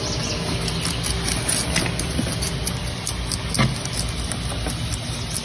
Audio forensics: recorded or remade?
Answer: recorded